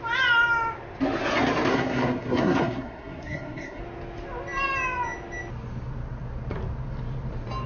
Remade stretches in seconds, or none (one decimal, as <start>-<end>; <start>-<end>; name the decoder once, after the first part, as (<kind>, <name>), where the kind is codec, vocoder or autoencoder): 1.7-3.8 (codec, SNAC)